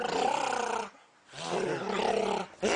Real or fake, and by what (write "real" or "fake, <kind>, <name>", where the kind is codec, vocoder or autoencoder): real